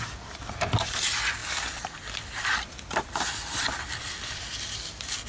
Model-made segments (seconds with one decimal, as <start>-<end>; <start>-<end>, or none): none